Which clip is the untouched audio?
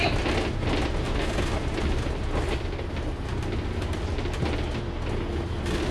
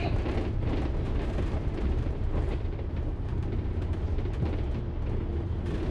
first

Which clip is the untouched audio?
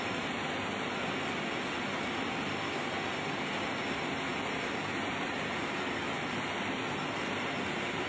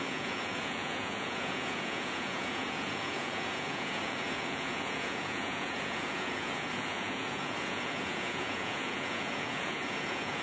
first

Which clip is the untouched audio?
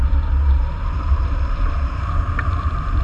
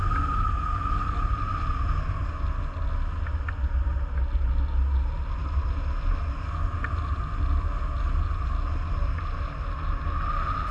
second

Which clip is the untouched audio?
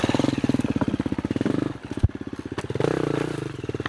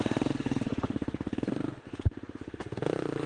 first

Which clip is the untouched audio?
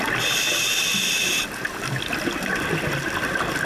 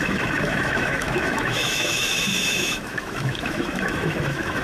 first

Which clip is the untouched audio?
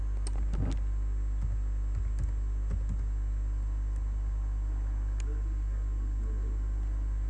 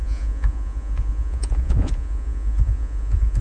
first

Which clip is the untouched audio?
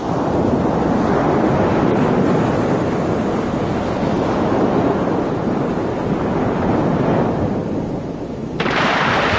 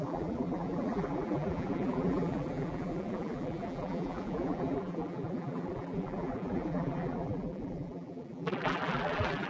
first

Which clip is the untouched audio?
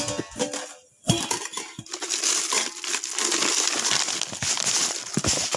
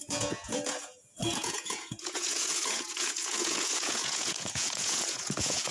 first